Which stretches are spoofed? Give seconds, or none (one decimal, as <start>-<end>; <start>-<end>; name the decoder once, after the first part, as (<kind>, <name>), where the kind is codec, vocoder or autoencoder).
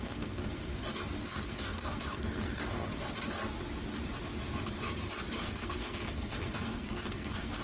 0.0-0.7 (codec, SNAC); 1.2-2.9; 5.4-7.6